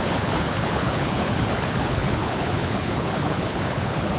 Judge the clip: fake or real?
fake